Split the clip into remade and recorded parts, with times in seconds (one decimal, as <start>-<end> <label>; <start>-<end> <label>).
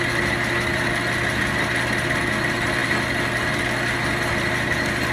0.0-5.1 recorded